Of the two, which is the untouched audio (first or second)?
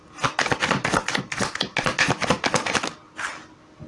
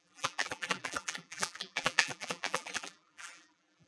first